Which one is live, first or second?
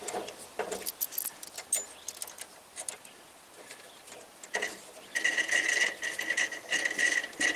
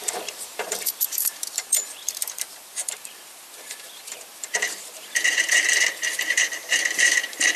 first